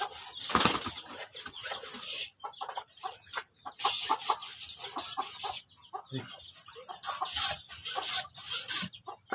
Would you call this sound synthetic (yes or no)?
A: no